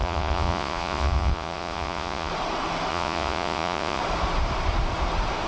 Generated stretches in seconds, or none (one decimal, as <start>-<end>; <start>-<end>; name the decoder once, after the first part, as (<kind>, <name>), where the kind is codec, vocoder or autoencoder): 0.0-2.3 (vocoder, Vocos); 2.9-4.0